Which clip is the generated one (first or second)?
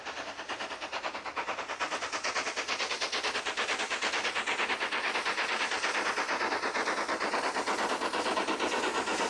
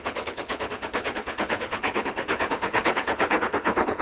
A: second